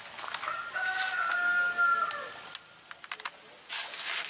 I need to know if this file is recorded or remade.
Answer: recorded